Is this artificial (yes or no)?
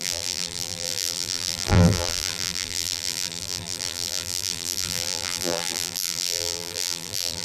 yes